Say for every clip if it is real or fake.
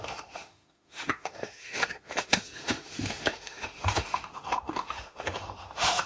fake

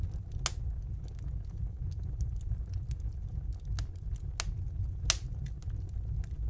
real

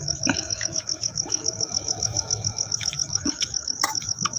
fake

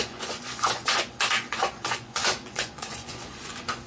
fake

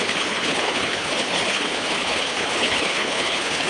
fake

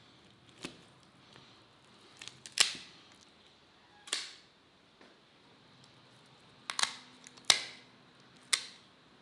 real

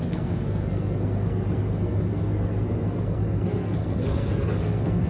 fake